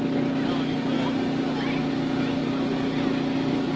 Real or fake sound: real